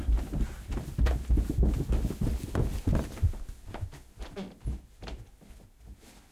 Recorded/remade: recorded